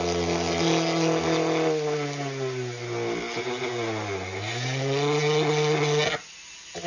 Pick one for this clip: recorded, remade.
recorded